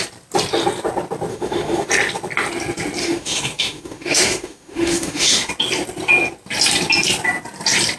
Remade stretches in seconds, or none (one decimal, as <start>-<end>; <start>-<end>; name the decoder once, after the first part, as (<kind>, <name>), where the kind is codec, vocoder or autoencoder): 1.3-1.9 (autoencoder, DAC-VAE); 3.0-5.5